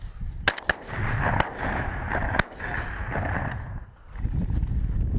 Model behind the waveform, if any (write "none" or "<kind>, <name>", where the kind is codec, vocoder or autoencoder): none